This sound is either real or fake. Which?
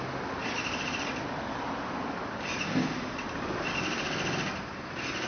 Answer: real